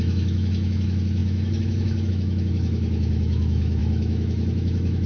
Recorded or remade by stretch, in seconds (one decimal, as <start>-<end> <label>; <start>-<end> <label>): 0.0-5.1 remade